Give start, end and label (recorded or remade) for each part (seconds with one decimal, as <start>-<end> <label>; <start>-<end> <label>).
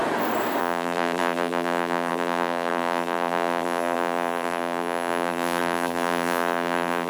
0.0-0.6 recorded; 0.6-7.1 remade